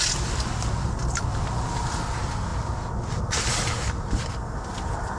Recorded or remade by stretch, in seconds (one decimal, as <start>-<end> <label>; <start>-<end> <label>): 0.0-5.2 recorded